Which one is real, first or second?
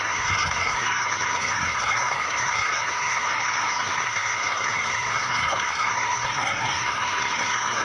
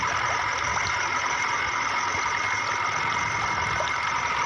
second